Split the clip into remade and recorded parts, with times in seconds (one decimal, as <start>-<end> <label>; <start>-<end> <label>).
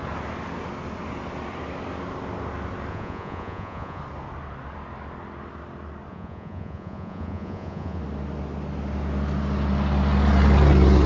0.0-2.9 recorded; 2.9-4.0 remade; 4.0-6.1 recorded; 6.1-8.0 remade; 8.0-11.1 recorded